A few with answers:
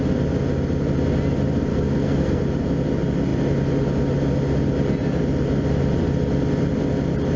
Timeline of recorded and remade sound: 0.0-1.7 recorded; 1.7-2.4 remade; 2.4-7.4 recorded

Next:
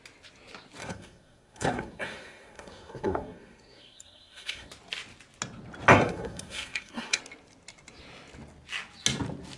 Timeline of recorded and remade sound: 0.0-0.8 recorded; 0.8-4.7 remade; 4.7-5.9 recorded; 5.9-7.2 remade; 7.2-9.6 recorded

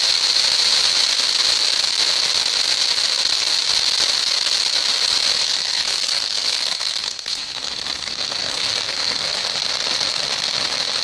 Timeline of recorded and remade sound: 0.0-5.4 recorded; 5.4-9.4 remade; 9.4-11.0 recorded

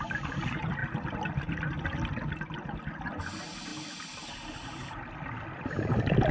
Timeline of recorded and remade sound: 0.0-6.3 recorded

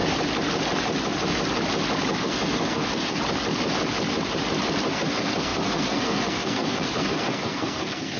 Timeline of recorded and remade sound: 0.0-2.2 recorded; 2.2-3.2 remade; 3.2-4.9 recorded; 4.9-8.2 remade

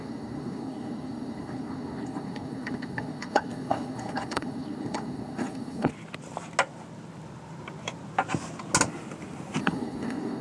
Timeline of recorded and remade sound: 0.0-5.9 remade; 5.9-9.6 recorded; 9.6-10.4 remade